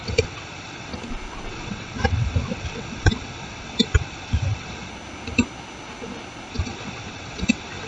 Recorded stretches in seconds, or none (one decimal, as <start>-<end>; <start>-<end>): 0.9-1.5; 4.9-6.5